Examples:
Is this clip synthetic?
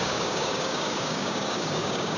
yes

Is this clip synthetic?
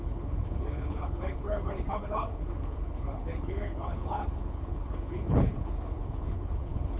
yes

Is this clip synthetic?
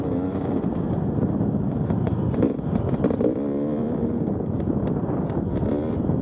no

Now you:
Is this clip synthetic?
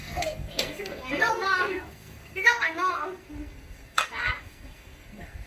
yes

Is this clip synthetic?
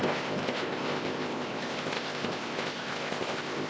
yes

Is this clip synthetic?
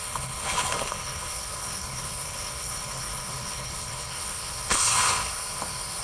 yes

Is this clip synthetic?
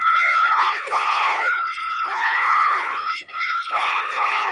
yes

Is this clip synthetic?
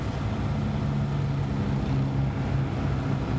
no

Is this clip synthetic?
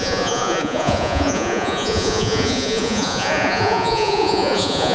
yes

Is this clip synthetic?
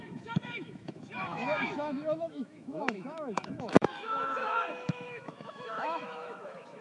yes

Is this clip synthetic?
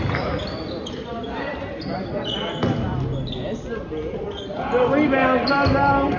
no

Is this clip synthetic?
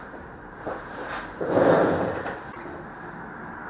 no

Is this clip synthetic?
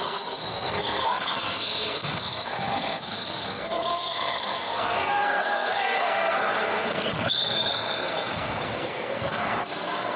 yes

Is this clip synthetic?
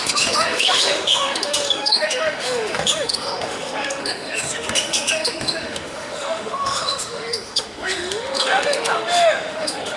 yes